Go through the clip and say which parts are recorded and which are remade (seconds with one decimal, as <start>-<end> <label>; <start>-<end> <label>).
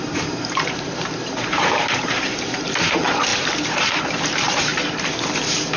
0.0-4.7 remade; 4.7-5.8 recorded